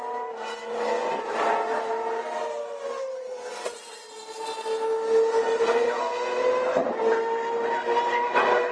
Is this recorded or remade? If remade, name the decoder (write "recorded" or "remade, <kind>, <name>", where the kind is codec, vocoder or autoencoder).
recorded